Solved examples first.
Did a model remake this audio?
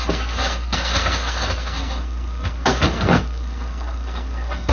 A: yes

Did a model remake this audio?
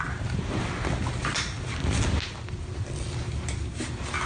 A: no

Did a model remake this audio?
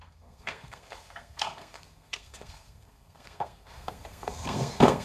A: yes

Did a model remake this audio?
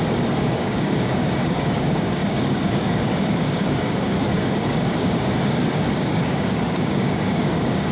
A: yes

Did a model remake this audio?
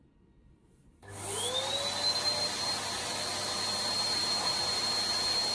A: no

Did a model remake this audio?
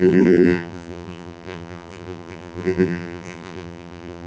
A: yes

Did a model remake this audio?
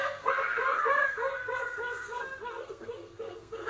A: yes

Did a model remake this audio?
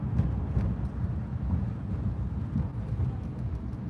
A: no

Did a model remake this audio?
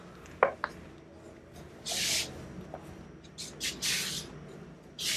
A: no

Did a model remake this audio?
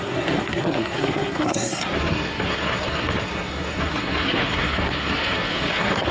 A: yes